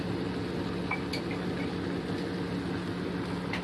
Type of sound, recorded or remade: recorded